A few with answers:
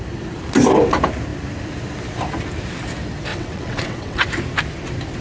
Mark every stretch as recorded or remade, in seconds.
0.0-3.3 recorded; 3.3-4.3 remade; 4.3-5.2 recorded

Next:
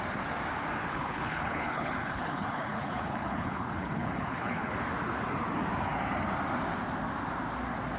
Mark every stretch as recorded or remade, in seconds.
0.0-0.9 recorded; 0.9-4.8 remade; 4.8-8.0 recorded

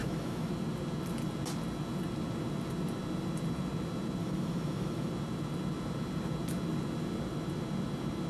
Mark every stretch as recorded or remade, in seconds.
0.0-0.5 remade; 0.5-4.2 recorded; 4.2-5.1 remade; 5.1-8.3 recorded

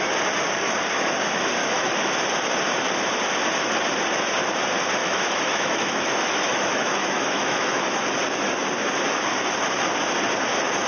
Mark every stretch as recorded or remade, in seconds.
0.0-1.6 recorded; 1.6-2.1 remade; 2.1-5.0 recorded; 5.0-8.0 remade; 8.0-10.9 recorded